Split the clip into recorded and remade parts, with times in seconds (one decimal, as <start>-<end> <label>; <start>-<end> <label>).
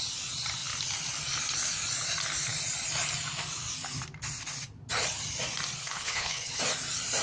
0.0-5.8 recorded; 5.8-6.6 remade; 6.6-7.2 recorded